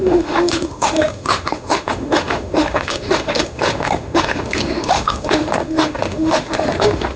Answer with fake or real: fake